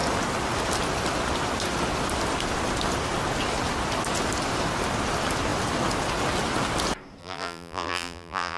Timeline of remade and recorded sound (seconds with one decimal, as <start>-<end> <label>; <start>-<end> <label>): 0.0-7.2 recorded; 7.2-8.6 remade